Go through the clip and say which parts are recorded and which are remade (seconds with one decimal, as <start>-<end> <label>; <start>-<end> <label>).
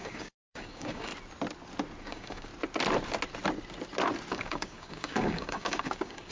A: 0.0-1.1 remade; 1.1-2.0 recorded; 2.0-2.5 remade; 2.5-4.3 recorded; 4.3-6.3 remade